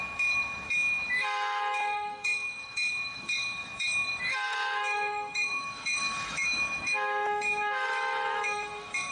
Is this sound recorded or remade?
remade